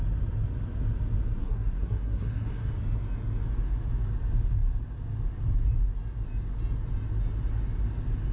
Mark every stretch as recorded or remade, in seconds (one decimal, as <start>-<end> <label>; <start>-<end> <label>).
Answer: 0.0-1.4 recorded; 1.4-2.7 remade; 2.7-8.3 recorded